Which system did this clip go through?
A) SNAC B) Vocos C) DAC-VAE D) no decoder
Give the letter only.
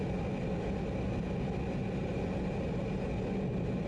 D